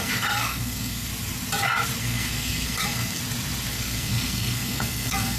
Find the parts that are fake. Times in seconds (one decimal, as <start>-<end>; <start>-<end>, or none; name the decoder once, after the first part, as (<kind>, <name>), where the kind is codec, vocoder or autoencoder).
0.0-1.1 (codec, SNAC); 2.0-3.2; 3.7-5.4